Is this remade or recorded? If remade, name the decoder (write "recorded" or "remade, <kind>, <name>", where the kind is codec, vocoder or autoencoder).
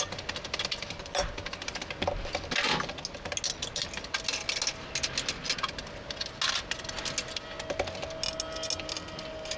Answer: recorded